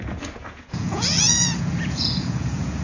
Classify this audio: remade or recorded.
remade